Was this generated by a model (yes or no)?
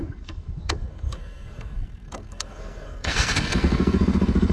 yes